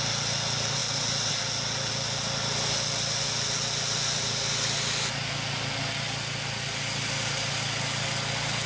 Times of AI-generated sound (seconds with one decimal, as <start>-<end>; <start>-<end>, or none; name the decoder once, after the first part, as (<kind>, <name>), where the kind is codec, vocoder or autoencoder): none